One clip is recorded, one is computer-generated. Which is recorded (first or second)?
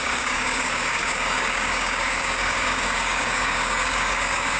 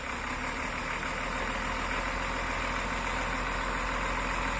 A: second